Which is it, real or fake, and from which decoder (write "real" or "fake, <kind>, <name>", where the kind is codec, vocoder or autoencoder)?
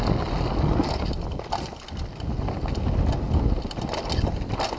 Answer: real